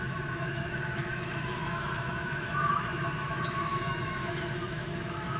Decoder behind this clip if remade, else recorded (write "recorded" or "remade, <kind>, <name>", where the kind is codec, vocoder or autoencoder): remade, autoencoder, DAC-VAE